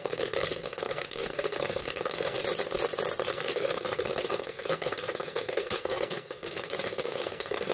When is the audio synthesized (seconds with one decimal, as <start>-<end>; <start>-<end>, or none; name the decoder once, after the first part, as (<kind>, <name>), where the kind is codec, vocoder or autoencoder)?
0.0-2.4 (codec, SNAC); 3.3-7.7